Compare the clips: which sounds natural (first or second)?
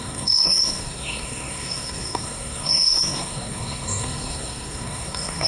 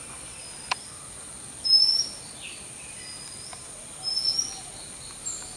second